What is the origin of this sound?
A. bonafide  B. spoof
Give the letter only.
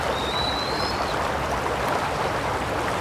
A